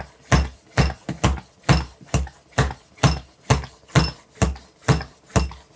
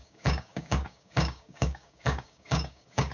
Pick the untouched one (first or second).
first